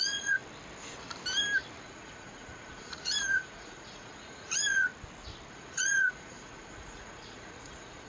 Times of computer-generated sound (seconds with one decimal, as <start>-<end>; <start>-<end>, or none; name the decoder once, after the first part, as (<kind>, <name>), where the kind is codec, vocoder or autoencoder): 0.0-0.4 (vocoder, Vocos); 1.8-4.9; 5.5-8.1